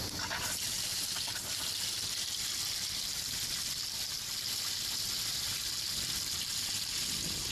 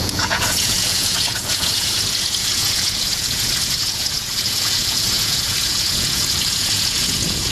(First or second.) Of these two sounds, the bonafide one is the first